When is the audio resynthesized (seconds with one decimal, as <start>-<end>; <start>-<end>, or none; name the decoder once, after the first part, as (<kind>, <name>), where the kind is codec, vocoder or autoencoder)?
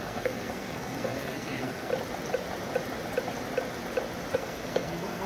0.0-1.9 (codec, SNAC); 4.3-5.3